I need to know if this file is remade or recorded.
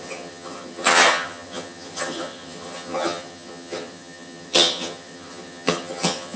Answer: remade